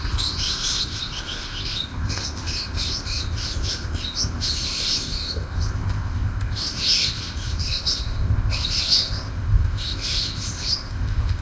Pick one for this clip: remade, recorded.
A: remade